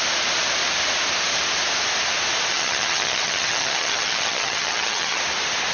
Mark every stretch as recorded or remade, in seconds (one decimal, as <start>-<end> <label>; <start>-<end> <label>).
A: 0.0-2.5 recorded; 2.5-5.2 remade; 5.2-5.7 recorded